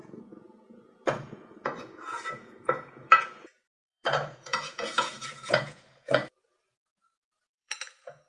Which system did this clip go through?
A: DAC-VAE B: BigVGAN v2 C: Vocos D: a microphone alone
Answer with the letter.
C